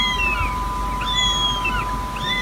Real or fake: real